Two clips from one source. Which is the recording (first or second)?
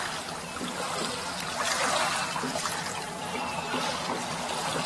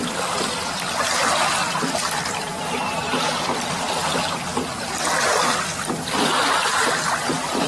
first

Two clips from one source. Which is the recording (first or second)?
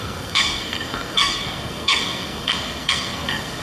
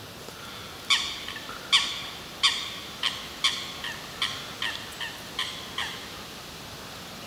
second